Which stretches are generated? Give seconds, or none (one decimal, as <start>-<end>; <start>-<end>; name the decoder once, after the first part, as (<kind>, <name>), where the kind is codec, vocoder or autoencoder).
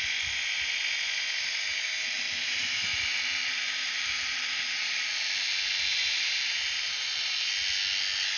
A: 2.9-4.9 (vocoder, BigVGAN v2); 5.9-7.5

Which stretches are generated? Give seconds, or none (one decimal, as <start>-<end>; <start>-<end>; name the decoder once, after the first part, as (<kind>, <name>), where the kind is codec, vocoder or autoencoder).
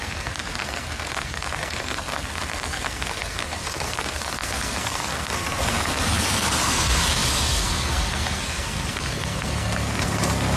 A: 0.0-10.6 (codec, SNAC)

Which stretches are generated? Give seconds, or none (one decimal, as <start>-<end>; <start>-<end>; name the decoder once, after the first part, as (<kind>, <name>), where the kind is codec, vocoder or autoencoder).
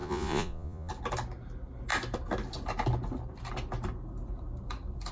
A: 0.0-0.9 (vocoder, Vocos)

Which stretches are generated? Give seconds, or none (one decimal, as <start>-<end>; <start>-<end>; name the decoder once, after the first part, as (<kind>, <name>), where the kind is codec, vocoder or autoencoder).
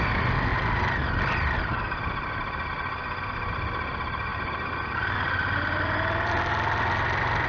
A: 0.5-2.3 (vocoder, BigVGAN v2); 4.3-6.5